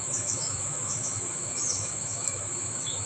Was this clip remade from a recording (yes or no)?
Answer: yes